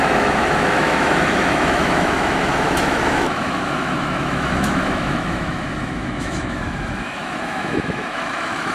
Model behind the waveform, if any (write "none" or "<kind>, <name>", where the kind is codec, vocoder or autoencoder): autoencoder, DAC-VAE